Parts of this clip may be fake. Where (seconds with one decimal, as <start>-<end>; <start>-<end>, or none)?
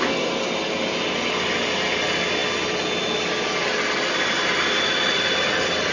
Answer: none